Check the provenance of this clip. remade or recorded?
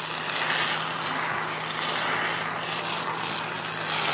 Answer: recorded